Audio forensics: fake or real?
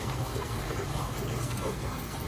fake